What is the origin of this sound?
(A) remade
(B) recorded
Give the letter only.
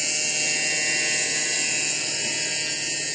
B